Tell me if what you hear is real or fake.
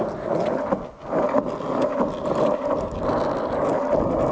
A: real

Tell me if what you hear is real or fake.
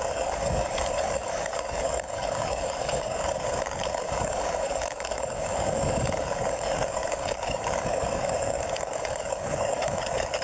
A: fake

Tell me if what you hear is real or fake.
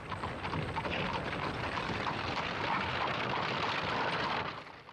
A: real